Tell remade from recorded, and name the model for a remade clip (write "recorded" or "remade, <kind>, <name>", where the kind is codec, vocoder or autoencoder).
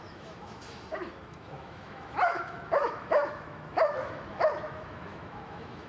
remade, autoencoder, DAC-VAE